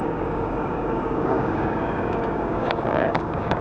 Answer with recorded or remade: remade